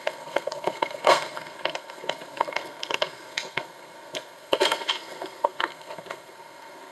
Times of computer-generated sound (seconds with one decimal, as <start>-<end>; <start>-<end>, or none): 0.0-6.9